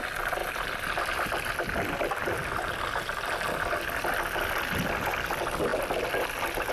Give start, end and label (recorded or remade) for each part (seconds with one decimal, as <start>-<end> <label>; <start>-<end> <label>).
0.0-0.4 recorded; 0.4-2.8 remade; 2.8-5.7 recorded; 5.7-6.7 remade